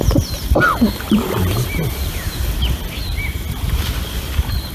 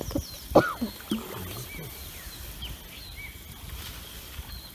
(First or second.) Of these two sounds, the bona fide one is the second